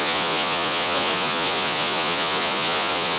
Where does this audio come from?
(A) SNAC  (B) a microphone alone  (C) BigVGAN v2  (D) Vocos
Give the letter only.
D